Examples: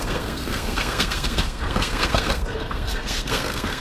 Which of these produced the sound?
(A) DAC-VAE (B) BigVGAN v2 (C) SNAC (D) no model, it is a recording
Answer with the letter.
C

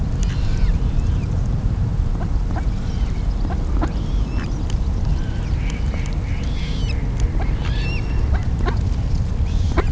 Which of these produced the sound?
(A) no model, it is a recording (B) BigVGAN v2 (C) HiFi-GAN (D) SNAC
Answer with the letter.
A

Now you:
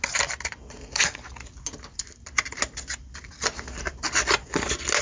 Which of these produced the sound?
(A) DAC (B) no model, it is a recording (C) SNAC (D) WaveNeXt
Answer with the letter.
B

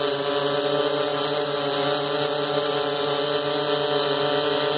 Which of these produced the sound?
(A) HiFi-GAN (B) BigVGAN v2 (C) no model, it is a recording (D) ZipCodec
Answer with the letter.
C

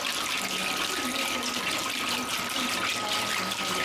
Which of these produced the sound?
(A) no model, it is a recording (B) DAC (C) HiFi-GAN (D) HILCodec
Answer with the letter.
A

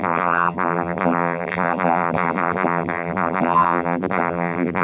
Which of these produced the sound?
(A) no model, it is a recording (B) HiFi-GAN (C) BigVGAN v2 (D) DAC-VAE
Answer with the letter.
C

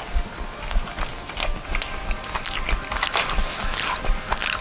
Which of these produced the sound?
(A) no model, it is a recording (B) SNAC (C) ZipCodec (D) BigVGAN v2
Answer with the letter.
A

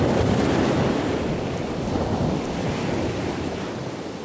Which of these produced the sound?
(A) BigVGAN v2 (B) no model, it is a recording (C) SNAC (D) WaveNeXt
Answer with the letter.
B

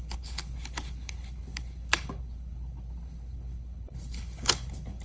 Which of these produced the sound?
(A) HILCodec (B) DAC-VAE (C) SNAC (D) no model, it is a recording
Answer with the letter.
A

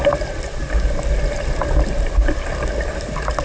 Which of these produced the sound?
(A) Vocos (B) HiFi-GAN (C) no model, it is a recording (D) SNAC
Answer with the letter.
C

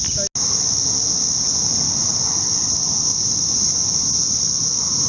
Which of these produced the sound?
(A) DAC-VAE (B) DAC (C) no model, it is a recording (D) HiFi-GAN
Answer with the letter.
C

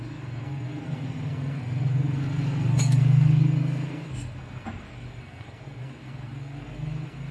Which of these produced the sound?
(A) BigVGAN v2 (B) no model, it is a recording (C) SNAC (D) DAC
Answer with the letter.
C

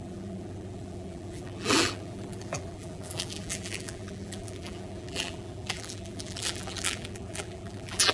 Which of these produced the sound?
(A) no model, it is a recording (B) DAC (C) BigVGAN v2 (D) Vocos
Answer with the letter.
C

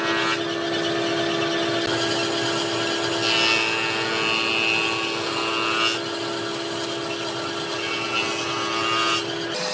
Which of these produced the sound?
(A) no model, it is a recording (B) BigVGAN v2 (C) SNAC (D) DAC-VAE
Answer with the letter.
A